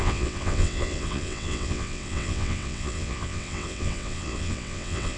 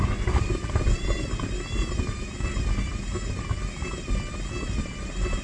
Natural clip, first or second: second